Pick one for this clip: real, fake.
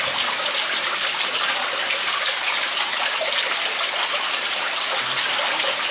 real